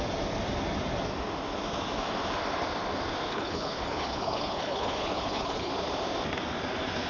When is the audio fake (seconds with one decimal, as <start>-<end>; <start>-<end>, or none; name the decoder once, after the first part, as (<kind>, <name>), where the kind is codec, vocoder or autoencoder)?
3.3-5.7 (codec, HILCodec)